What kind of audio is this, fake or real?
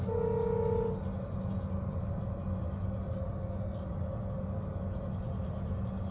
real